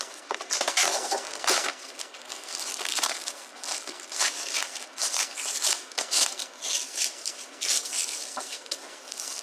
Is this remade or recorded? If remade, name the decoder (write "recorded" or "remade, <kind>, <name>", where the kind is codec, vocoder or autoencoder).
remade, codec, SNAC